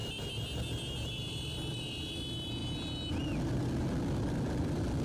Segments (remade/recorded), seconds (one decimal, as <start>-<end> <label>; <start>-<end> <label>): 0.0-5.0 recorded